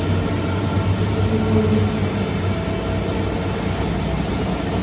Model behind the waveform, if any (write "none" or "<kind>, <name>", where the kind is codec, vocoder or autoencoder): none